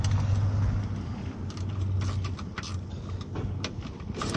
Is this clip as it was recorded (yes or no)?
yes